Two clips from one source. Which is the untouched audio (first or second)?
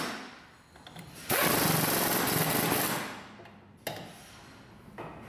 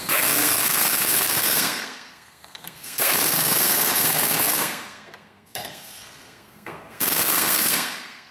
first